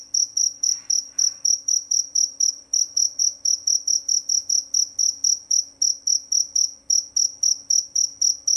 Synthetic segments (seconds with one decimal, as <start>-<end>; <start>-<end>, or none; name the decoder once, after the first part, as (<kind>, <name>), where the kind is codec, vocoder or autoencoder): 0.4-3.2 (vocoder, BigVGAN v2)